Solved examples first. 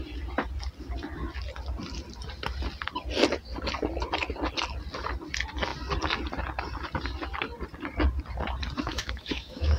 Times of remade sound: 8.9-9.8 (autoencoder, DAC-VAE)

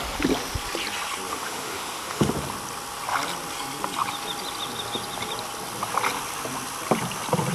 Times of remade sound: 1.3-2.3 (autoencoder, DAC-VAE)

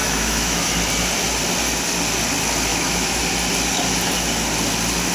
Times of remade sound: 0.0-0.7 (autoencoder, DAC-VAE); 2.7-3.2

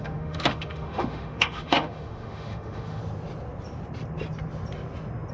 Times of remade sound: 0.0-3.0 (autoencoder, DAC-VAE)

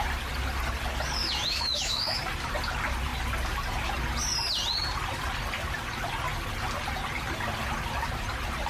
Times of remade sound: 1.2-2.2 (autoencoder, DAC-VAE)

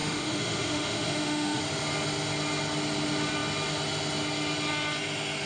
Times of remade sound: 0.0-1.6 (autoencoder, DAC-VAE)

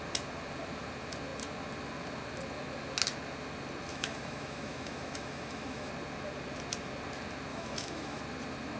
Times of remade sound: 3.9-5.9 (autoencoder, DAC-VAE); 7.5-8.2